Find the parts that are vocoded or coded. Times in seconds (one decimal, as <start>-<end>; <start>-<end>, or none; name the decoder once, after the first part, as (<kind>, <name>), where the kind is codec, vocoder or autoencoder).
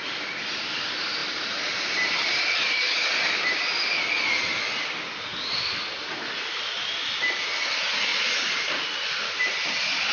none